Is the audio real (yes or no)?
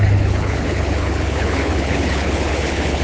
no